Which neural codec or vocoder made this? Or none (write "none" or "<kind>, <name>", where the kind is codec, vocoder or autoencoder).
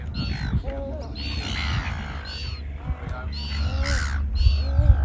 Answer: none